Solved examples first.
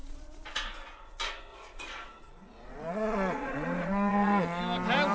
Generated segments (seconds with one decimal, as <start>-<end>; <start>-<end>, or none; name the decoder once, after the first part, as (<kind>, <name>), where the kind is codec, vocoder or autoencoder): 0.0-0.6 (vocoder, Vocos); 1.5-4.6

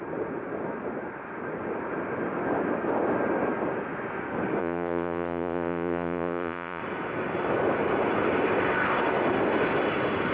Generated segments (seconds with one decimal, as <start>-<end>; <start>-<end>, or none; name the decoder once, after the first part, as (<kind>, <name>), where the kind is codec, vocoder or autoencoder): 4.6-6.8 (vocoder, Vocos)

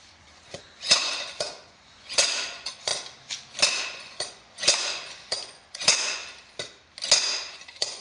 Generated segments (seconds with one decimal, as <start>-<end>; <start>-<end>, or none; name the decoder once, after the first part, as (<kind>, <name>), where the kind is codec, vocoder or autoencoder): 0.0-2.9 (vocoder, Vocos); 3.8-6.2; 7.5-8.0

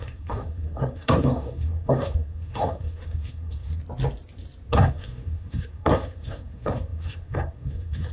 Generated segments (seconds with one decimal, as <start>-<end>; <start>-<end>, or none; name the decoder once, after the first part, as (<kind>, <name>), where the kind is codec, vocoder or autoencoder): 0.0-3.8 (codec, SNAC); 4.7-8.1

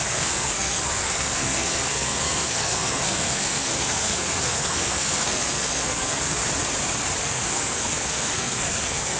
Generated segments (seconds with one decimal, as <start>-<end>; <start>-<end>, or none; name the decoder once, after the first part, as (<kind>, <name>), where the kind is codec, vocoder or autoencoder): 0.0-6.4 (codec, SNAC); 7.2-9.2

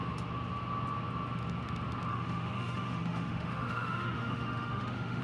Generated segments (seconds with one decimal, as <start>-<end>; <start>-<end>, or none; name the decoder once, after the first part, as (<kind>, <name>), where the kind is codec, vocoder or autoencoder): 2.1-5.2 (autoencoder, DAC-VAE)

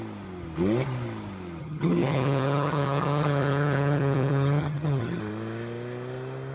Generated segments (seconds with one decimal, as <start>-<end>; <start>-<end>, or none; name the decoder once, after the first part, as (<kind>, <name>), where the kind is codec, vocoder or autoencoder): 1.6-5.2 (vocoder, HiFi-GAN)

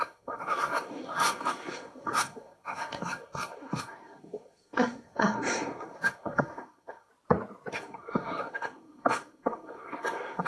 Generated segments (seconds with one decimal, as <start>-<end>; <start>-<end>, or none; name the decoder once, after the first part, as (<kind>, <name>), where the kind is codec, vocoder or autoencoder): 0.0-7.1 (codec, SNAC); 7.7-10.5